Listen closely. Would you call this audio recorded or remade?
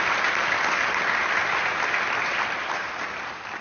recorded